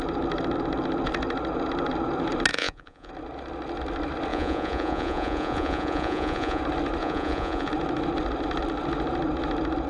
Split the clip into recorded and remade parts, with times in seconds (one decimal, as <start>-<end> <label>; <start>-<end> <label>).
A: 0.0-2.5 recorded; 2.5-3.1 remade; 3.1-4.3 recorded; 4.3-6.6 remade; 6.6-7.0 recorded; 7.0-7.7 remade; 7.7-9.9 recorded